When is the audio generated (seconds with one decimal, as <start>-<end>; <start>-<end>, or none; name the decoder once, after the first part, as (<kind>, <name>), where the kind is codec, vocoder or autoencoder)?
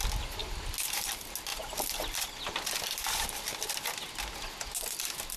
none